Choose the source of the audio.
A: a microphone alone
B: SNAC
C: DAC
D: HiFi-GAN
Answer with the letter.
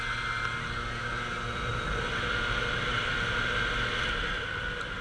A